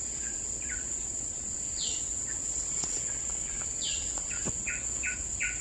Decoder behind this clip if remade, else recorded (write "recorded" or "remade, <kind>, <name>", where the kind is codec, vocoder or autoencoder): remade, vocoder, WaveNeXt